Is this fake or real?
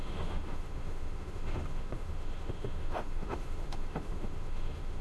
fake